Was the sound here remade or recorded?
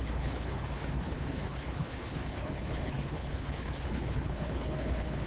remade